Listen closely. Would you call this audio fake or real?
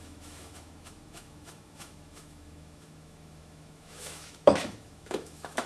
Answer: fake